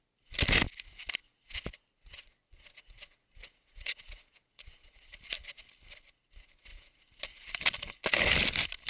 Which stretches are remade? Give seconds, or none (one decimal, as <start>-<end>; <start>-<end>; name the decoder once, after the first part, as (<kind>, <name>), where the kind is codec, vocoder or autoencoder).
1.3-5.2 (vocoder, Vocos)